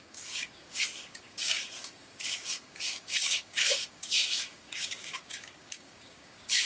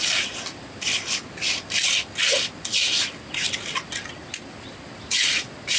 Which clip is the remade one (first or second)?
first